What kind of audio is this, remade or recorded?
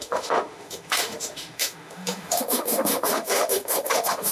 remade